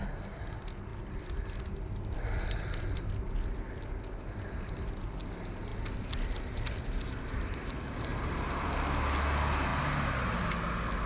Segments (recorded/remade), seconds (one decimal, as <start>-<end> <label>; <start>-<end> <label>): 0.0-5.7 recorded; 5.7-7.7 remade; 7.7-8.1 recorded; 8.1-8.7 remade; 8.7-11.1 recorded